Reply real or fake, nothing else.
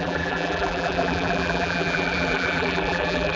fake